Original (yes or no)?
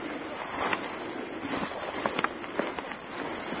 yes